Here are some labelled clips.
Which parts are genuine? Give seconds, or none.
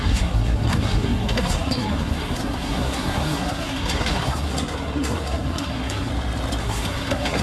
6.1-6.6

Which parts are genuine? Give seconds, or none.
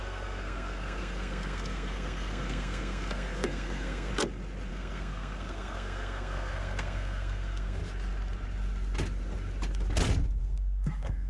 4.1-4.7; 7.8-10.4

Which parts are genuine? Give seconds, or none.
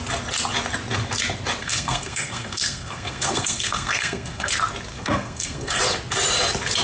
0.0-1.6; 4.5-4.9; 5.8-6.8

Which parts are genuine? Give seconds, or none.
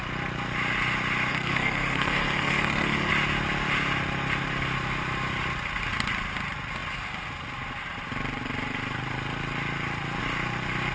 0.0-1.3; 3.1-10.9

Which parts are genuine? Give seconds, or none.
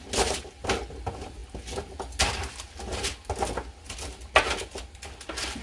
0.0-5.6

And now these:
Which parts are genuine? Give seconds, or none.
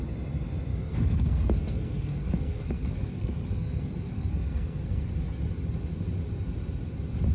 0.0-0.7; 5.1-7.3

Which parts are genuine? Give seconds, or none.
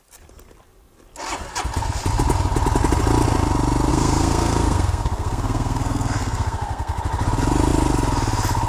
0.0-3.9; 7.0-8.7